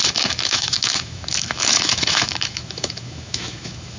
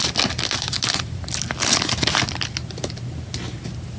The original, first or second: second